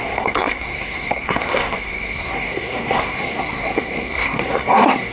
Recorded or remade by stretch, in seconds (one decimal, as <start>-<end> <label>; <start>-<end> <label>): 0.0-5.1 remade